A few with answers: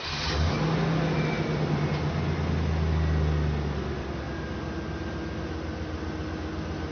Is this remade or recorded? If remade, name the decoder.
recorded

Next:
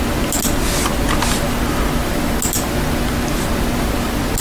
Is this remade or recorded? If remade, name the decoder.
recorded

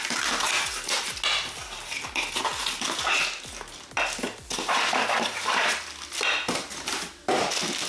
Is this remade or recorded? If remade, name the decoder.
recorded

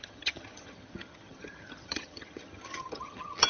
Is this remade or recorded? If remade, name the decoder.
remade, vocoder, HiFi-GAN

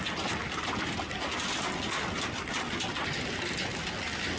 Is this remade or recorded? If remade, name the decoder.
recorded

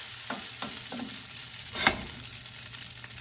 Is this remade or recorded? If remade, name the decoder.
recorded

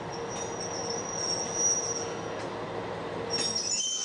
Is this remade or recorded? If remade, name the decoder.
recorded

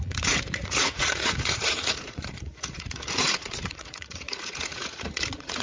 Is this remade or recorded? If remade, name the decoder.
remade, vocoder, Vocos